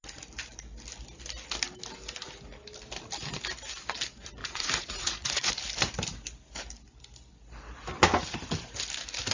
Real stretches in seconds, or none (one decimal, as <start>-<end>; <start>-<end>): 0.0-4.4; 5.5-9.3